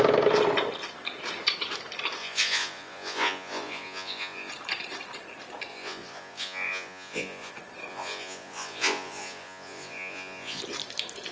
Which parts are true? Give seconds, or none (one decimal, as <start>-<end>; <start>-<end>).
0.0-2.2; 4.5-5.7; 7.5-7.9; 10.6-11.3